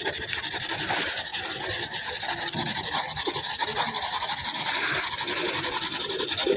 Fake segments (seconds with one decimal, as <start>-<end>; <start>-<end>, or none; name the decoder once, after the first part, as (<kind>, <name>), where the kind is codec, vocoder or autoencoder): none